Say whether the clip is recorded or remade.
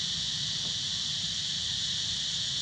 recorded